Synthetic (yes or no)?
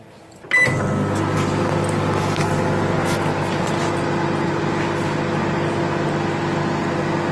no